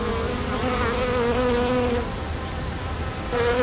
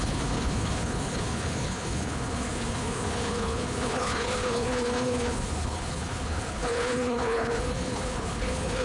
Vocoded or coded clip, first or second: second